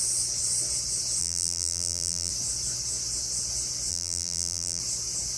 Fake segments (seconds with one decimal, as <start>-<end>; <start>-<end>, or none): 1.2-2.3; 3.9-4.8